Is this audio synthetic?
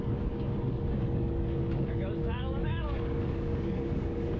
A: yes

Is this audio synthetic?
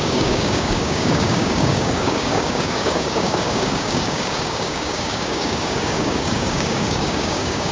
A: yes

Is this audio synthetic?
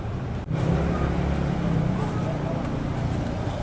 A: no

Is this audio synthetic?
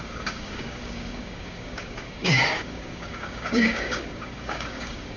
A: yes